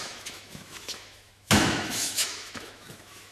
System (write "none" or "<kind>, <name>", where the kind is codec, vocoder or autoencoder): autoencoder, DAC-VAE